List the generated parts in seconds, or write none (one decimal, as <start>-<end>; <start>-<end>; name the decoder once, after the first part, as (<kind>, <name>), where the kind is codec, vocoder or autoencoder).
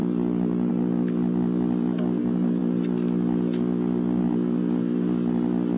none